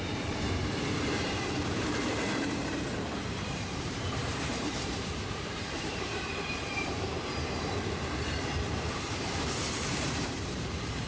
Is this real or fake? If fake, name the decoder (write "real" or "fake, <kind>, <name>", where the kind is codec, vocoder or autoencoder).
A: fake, vocoder, BigVGAN v2